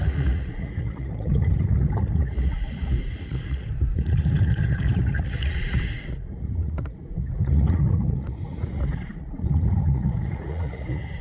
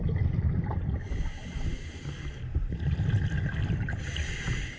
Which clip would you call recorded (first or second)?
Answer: second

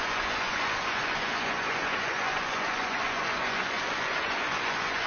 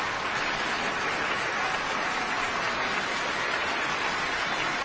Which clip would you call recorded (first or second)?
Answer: second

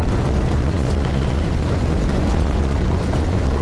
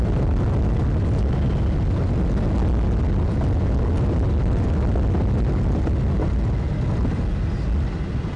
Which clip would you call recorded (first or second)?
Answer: second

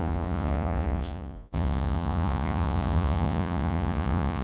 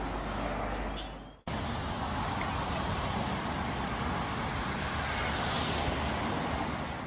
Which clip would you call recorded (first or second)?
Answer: second